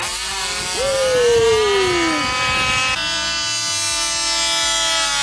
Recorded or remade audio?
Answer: recorded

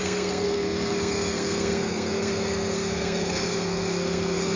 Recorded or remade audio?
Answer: remade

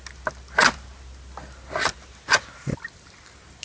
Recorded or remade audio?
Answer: recorded